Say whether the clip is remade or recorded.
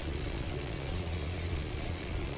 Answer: remade